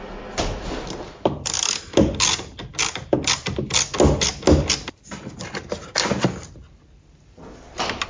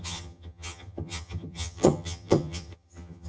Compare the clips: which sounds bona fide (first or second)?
first